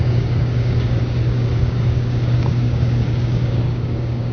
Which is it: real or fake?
fake